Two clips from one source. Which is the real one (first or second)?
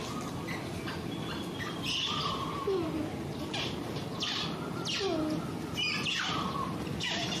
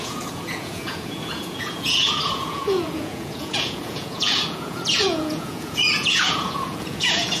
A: first